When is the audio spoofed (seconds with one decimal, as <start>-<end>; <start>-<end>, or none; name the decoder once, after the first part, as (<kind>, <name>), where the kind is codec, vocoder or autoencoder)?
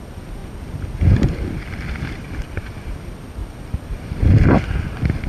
none